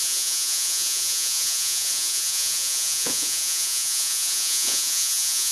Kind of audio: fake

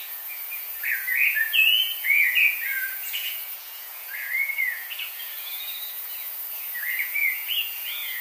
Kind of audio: fake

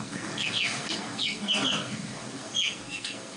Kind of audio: fake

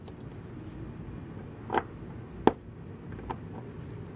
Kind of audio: real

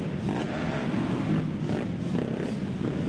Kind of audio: real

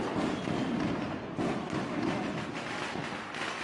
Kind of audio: real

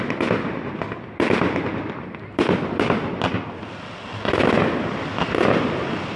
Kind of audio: real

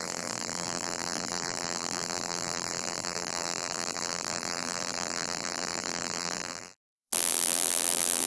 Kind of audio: fake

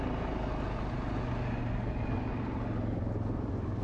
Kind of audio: real